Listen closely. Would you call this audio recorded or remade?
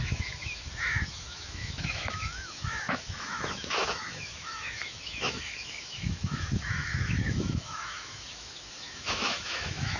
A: remade